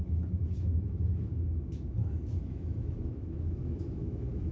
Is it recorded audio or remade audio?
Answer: remade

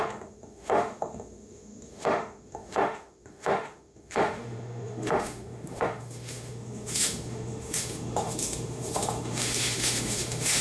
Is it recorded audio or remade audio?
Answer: remade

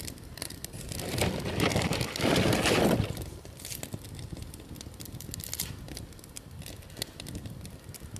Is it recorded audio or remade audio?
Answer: recorded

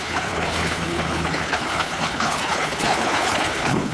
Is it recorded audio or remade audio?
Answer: remade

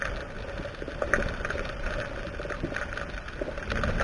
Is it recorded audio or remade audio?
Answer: recorded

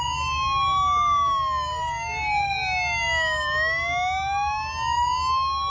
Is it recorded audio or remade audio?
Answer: recorded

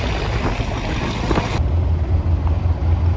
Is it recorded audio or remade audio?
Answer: recorded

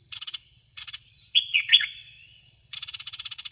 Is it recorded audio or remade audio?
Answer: remade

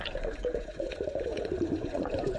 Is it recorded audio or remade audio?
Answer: remade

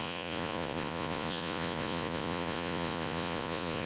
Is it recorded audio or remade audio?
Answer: remade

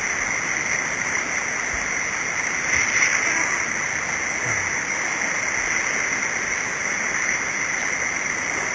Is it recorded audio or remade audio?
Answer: recorded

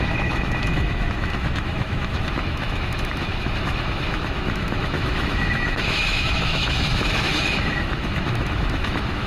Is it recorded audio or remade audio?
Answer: remade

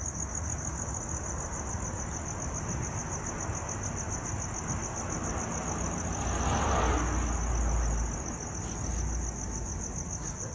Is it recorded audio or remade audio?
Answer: recorded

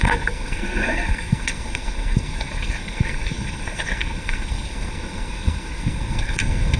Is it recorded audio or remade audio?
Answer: remade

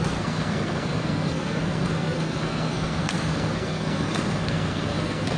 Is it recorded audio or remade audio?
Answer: remade